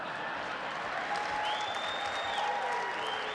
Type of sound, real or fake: real